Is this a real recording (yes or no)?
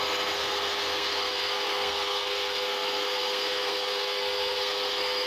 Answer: no